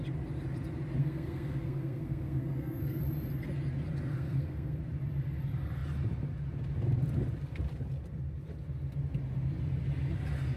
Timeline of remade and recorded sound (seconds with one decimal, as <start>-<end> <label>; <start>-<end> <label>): 0.0-1.0 recorded; 1.0-3.0 remade; 3.0-4.1 recorded; 4.1-4.8 remade; 4.8-10.6 recorded